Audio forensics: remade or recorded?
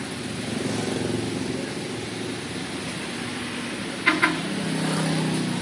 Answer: recorded